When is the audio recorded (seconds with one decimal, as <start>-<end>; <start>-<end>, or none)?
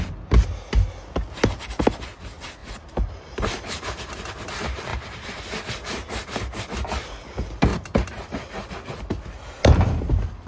0.0-2.6; 4.1-4.9; 5.4-10.5